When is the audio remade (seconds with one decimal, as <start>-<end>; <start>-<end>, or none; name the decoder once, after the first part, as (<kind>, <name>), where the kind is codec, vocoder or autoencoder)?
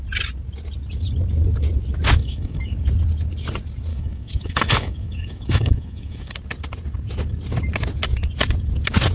2.2-2.7 (autoencoder, DAC-VAE); 3.9-6.3